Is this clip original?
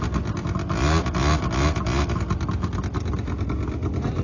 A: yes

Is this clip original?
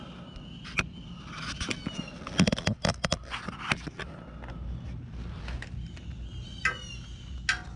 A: yes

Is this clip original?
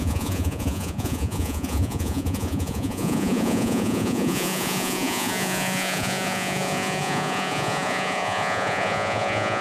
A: no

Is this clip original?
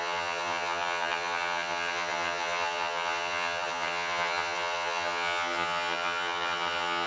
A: no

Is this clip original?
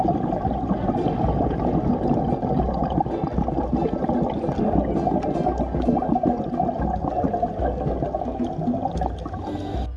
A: yes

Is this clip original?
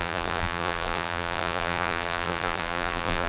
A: no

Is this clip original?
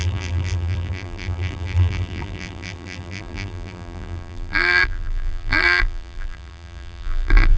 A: no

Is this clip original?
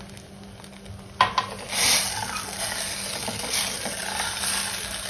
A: yes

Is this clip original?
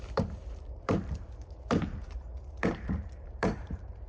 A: no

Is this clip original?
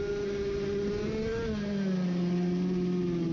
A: yes